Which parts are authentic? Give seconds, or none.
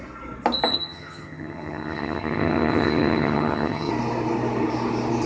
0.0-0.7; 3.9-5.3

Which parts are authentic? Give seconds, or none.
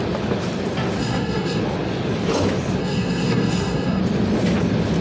0.0-1.0; 1.6-2.8; 4.0-5.0